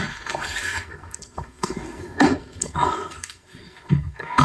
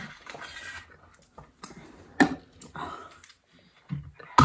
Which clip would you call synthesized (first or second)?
first